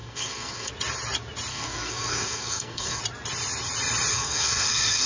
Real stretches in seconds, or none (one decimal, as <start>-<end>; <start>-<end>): 0.7-1.5; 3.0-4.1